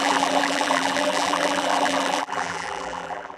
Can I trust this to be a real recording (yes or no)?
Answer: no